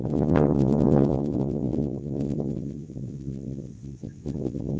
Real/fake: fake